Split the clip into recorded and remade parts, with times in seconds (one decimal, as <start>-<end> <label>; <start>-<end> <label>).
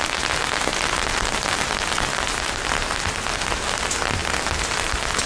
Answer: 0.0-5.3 recorded